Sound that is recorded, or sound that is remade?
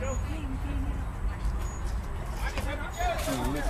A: recorded